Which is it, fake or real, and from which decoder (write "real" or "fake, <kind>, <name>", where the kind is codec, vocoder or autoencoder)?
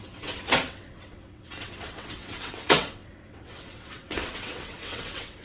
fake, vocoder, WaveNeXt